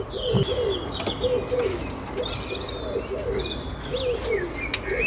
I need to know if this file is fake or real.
real